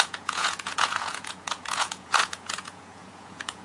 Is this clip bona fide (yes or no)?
no